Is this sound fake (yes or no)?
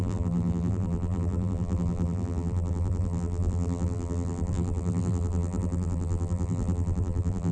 yes